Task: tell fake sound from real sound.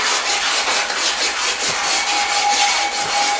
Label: real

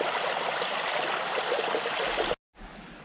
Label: real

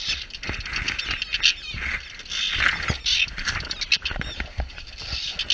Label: real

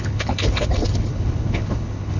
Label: fake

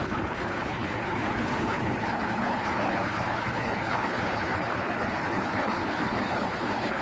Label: fake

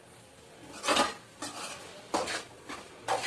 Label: real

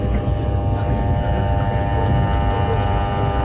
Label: real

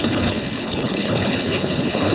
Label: fake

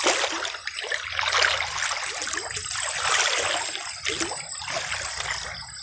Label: real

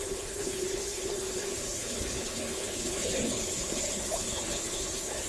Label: fake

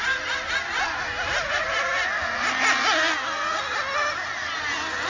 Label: real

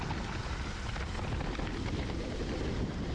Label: real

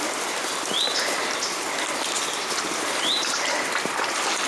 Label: real